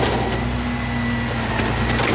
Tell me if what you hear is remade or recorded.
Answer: recorded